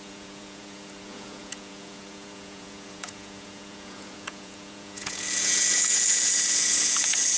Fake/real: fake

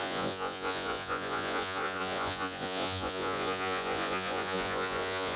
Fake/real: fake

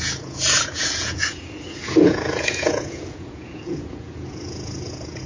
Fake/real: fake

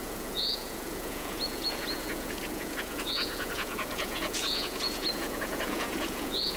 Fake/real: fake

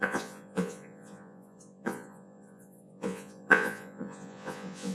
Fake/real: fake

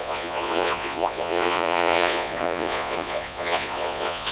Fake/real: fake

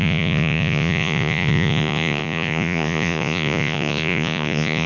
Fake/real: fake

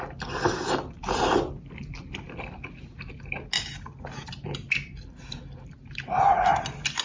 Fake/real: real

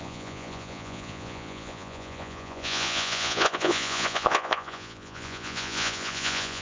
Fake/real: fake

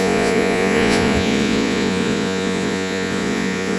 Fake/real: fake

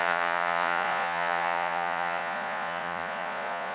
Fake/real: fake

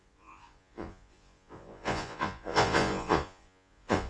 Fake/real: fake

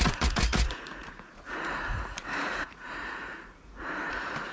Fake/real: fake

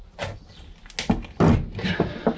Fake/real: real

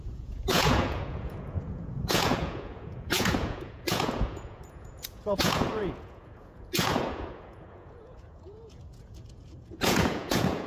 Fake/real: fake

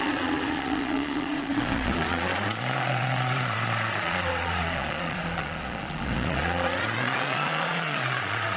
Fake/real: fake